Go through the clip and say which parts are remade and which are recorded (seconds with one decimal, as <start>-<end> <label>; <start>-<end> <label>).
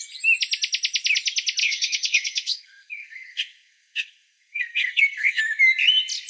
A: 0.0-1.6 recorded; 1.6-5.4 remade; 5.4-6.3 recorded